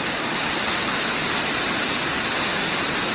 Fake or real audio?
real